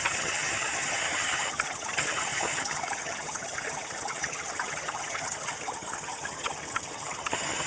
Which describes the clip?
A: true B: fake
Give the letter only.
B